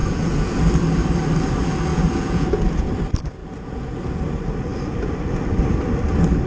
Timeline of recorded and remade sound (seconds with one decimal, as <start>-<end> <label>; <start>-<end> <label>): 0.0-0.6 remade; 0.6-1.9 recorded; 1.9-2.9 remade; 2.9-3.4 recorded; 3.4-4.2 remade; 4.2-6.5 recorded